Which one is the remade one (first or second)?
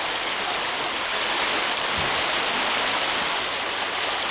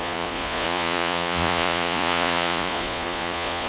second